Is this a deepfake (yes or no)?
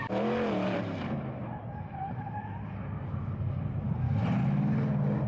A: no